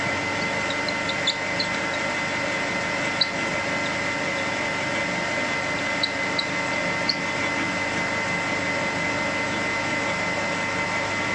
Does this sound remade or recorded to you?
recorded